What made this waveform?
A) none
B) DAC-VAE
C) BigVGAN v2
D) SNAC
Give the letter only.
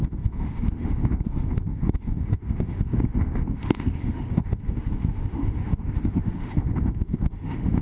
B